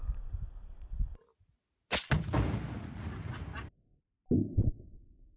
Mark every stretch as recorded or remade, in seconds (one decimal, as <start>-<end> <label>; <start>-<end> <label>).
0.0-5.4 recorded